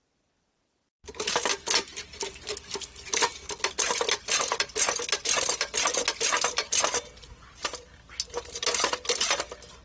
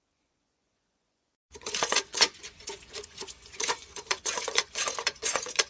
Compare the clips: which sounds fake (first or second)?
second